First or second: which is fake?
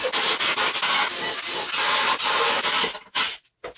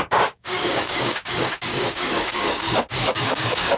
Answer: second